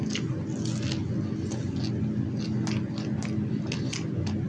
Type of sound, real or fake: real